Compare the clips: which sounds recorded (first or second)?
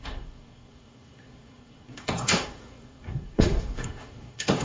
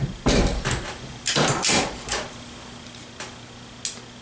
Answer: second